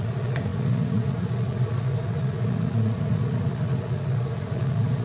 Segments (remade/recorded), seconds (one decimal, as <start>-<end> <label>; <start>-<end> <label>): 0.0-5.0 remade